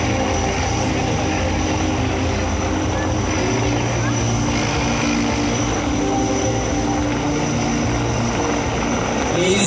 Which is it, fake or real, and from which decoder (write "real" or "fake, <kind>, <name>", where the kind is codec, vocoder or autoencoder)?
real